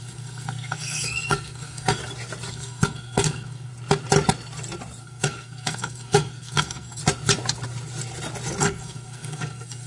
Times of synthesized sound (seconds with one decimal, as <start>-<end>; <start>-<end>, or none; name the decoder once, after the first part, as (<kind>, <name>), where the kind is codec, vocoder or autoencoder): 0.0-2.0 (codec, SNAC); 2.5-3.7; 5.0-7.0; 8.6-9.9